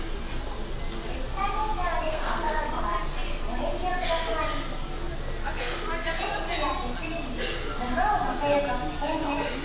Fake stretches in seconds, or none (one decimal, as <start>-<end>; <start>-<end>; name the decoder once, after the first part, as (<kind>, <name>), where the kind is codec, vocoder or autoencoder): 2.1-2.6 (codec, SNAC)